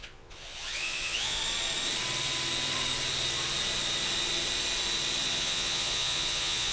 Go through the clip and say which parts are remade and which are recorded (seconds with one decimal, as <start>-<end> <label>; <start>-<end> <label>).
0.0-1.4 remade; 1.4-5.3 recorded; 5.3-6.7 remade